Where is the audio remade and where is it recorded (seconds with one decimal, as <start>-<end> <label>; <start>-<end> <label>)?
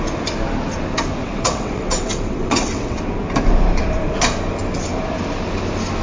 0.0-1.2 recorded; 1.2-3.0 remade; 3.0-6.0 recorded